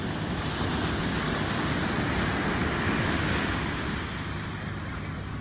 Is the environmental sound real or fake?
real